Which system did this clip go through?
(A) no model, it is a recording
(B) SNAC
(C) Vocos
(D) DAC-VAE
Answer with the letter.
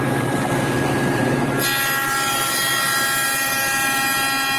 A